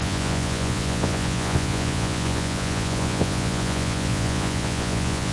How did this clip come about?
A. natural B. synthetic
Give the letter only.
B